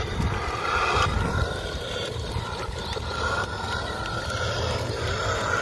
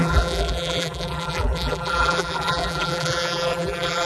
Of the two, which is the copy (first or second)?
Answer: second